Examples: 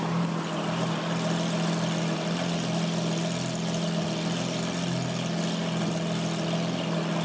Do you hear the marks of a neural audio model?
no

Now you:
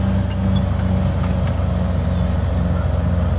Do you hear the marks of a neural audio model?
no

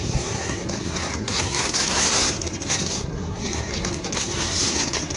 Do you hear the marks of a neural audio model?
yes